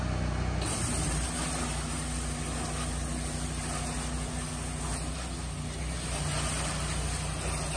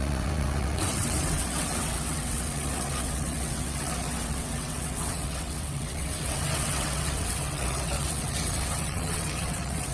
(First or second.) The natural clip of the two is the first